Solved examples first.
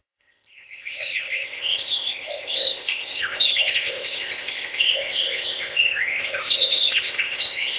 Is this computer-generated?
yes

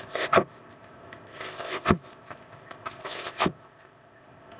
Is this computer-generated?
yes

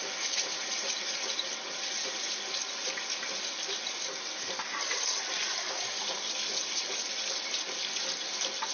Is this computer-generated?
no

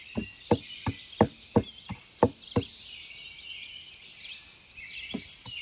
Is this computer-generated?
no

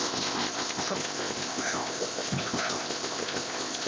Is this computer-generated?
yes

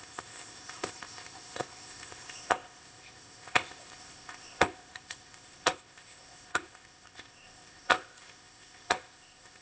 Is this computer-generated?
yes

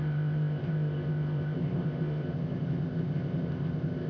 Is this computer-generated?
yes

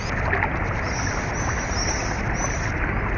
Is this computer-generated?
no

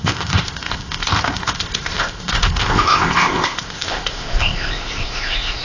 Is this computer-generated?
yes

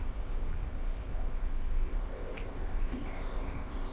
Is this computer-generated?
yes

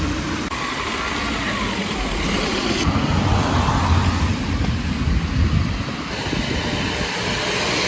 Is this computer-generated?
no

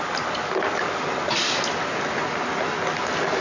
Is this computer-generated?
no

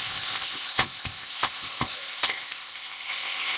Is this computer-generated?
yes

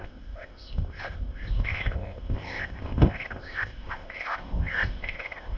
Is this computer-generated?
yes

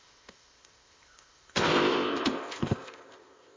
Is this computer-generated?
yes